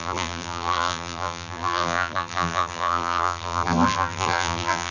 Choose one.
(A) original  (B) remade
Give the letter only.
B